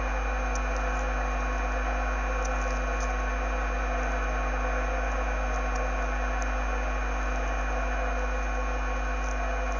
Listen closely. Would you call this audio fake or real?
real